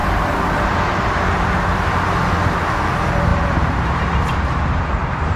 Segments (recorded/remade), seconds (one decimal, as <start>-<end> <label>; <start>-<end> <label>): 0.0-2.1 remade; 2.1-3.3 recorded; 3.3-5.4 remade